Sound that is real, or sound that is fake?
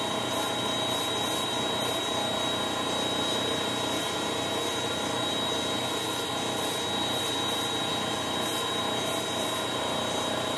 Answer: real